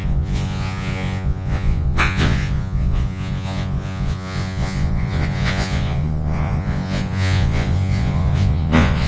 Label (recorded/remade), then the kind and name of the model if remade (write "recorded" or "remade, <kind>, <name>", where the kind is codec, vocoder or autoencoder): remade, vocoder, Vocos